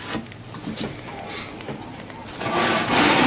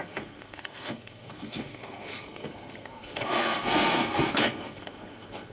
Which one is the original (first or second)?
first